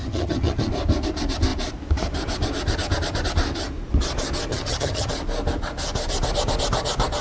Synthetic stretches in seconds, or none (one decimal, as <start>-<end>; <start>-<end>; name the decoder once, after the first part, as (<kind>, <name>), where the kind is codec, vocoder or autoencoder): 0.0-0.7 (vocoder, HiFi-GAN); 4.5-5.1